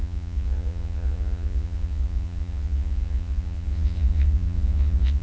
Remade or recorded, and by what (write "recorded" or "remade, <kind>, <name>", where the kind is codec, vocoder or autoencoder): remade, vocoder, Vocos